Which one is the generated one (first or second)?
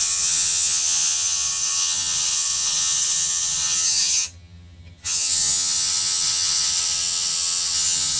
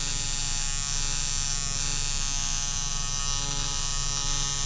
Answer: first